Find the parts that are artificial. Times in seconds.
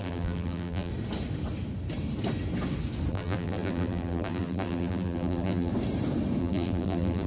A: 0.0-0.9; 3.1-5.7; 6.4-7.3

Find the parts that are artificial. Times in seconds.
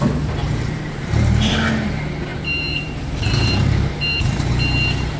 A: 0.4-1.5; 2.3-4.5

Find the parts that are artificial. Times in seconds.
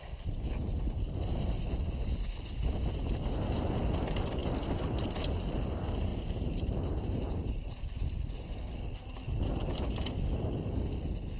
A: 6.1-8.5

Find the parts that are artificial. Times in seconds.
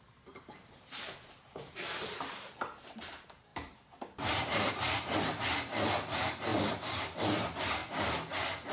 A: 0.0-7.8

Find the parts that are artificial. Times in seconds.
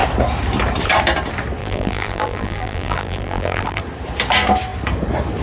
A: 1.6-3.8